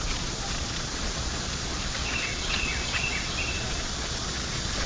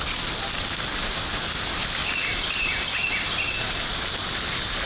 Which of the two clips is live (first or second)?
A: second